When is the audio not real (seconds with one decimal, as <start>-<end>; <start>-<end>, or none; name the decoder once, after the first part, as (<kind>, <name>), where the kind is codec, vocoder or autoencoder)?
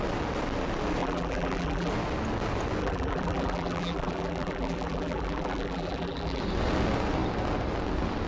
1.0-1.9 (vocoder, BigVGAN v2); 2.8-6.4